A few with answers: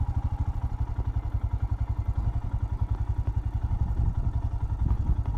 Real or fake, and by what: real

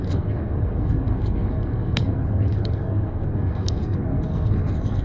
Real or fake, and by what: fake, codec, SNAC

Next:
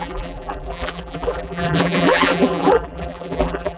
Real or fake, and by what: fake, vocoder, BigVGAN v2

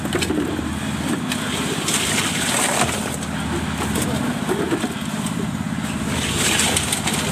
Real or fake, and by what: real